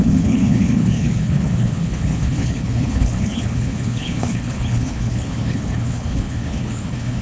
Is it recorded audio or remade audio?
remade